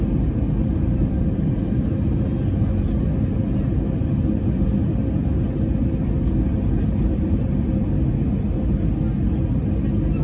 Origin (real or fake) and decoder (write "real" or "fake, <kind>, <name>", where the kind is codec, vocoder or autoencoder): real